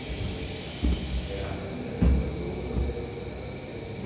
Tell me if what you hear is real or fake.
real